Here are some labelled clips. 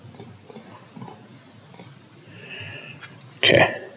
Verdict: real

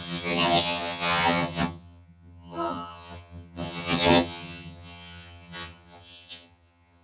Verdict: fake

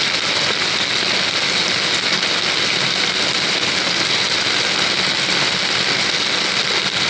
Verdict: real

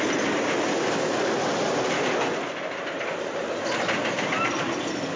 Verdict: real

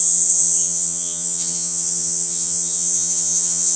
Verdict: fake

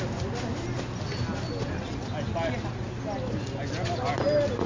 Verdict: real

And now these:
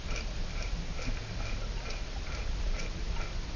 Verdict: real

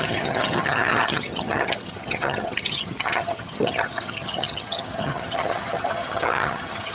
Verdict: fake